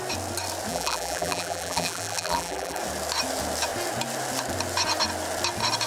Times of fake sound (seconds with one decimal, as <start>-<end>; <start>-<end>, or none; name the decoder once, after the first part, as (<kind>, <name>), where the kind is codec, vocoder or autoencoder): 0.7-2.8 (vocoder, BigVGAN v2)